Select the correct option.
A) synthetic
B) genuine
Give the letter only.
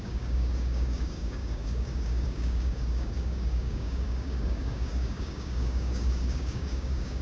A